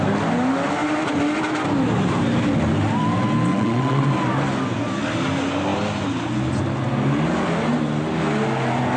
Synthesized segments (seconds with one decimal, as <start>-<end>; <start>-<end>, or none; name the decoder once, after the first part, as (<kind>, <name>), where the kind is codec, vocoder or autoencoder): 3.5-4.1 (vocoder, WaveNeXt)